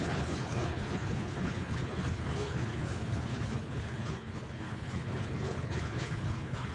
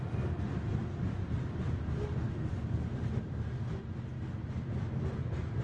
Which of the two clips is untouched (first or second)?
second